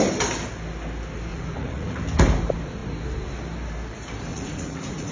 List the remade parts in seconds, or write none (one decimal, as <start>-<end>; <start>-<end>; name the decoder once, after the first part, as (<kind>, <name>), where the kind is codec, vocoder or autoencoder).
1.3-2.0 (vocoder, Vocos); 4.3-5.1